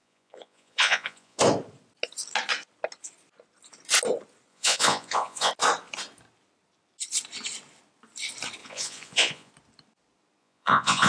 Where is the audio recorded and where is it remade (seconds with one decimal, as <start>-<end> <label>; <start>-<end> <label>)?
0.0-1.4 remade; 1.4-4.5 recorded; 4.5-5.5 remade; 5.5-8.6 recorded; 8.6-9.5 remade; 9.5-10.4 recorded; 10.4-11.1 remade